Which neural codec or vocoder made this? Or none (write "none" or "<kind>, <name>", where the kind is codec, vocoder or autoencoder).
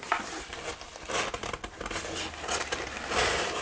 none